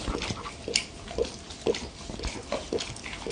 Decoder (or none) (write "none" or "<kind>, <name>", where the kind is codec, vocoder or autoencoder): none